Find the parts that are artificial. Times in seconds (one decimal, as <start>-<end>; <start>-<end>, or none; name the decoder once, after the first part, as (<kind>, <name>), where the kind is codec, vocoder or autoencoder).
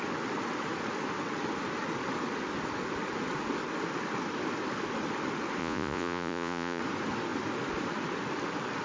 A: 5.6-6.8 (vocoder, Vocos)